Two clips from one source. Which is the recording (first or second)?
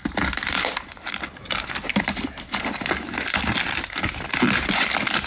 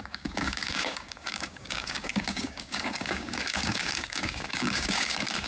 first